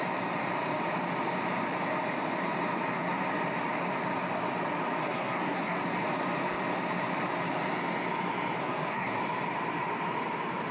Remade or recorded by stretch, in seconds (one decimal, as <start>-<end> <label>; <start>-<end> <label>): 0.0-5.0 recorded; 5.0-5.8 remade; 5.8-8.6 recorded; 8.6-9.2 remade; 9.2-10.7 recorded